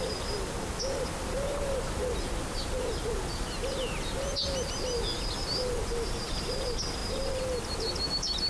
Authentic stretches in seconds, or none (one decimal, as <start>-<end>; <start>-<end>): 0.0-8.5